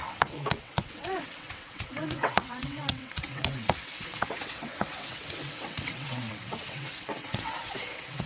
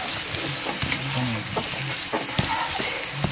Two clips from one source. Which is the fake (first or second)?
first